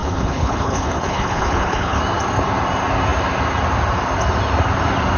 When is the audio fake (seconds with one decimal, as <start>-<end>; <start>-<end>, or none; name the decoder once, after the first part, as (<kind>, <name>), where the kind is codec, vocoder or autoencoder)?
0.0-2.0 (codec, HILCodec)